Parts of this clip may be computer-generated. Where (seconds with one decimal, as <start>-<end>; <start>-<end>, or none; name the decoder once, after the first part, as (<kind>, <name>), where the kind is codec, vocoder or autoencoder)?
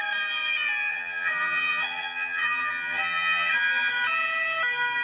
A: 0.9-3.9 (vocoder, HiFi-GAN)